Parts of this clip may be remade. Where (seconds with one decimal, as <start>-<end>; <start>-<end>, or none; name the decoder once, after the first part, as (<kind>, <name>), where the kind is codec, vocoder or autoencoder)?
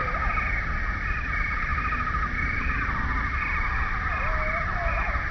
none